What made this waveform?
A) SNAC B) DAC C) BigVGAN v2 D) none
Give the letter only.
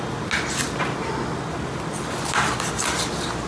D